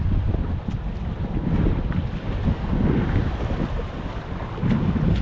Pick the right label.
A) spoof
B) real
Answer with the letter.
B